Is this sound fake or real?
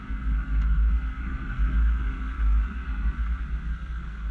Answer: fake